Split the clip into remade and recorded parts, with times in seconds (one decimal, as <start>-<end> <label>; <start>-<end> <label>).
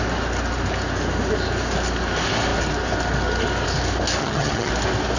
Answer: 0.0-4.2 recorded; 4.2-4.7 remade; 4.7-5.2 recorded